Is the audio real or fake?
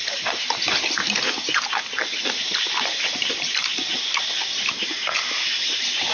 real